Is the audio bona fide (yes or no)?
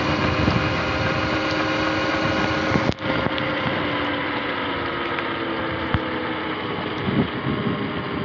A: yes